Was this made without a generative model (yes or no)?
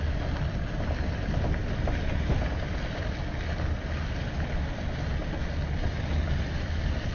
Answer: yes